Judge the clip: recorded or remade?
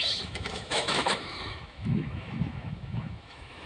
remade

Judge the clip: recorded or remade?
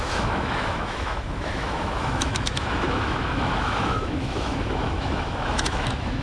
remade